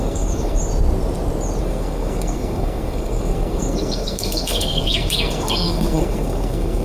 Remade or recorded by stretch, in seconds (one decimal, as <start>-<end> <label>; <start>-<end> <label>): 0.0-0.6 remade; 0.6-1.6 recorded; 1.6-6.8 remade